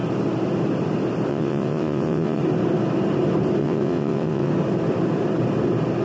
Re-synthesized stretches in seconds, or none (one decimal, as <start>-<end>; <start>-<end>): 1.3-2.4; 3.6-4.5